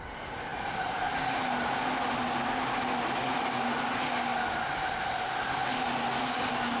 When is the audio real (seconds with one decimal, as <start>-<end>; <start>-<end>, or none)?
0.0-6.8